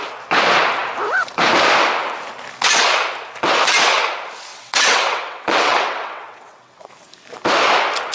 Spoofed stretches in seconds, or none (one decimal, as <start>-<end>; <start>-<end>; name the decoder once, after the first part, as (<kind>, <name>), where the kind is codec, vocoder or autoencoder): 4.5-6.9 (vocoder, WaveNeXt)